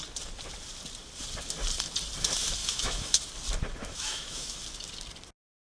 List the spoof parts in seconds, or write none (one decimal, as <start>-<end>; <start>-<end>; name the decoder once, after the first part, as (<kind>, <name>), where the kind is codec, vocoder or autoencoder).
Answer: 2.6-3.2 (autoencoder, DAC-VAE); 3.8-4.6